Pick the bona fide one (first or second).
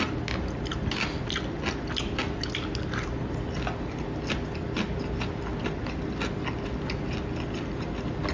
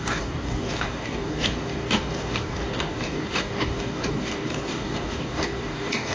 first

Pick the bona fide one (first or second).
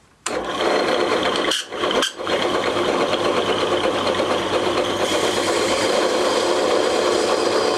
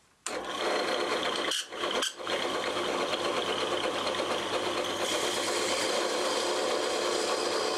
second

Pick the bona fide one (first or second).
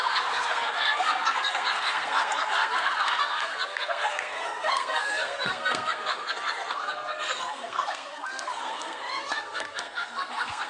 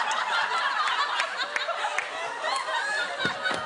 second